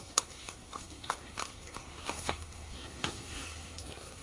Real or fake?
fake